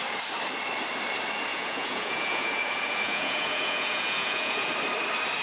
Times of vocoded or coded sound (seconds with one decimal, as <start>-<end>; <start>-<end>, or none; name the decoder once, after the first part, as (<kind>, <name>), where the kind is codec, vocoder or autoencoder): 1.5-4.7 (vocoder, Vocos)